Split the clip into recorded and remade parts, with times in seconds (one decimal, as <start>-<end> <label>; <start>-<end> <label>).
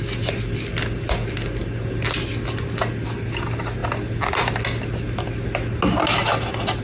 0.0-6.8 recorded